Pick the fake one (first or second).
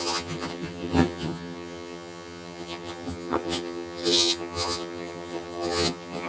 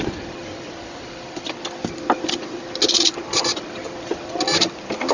first